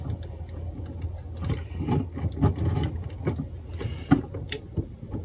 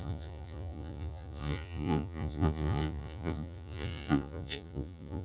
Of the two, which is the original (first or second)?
first